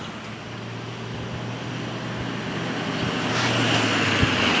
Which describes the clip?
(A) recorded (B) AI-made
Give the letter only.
A